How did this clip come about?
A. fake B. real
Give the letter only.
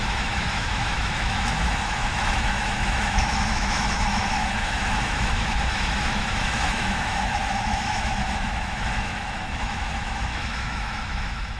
A